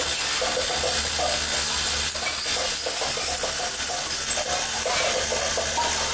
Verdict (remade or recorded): recorded